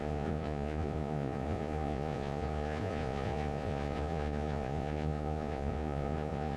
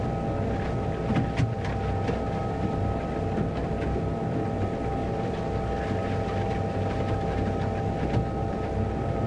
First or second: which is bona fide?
second